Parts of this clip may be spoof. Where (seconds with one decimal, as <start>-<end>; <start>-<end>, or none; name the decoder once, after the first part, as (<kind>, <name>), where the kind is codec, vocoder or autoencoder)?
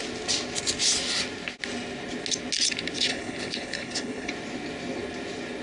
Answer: 3.1-4.3 (codec, HILCodec)